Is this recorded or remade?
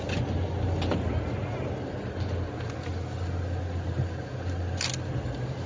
recorded